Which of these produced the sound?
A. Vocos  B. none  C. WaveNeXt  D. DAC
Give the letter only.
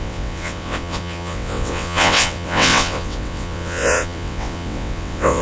C